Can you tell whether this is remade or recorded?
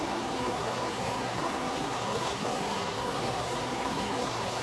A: remade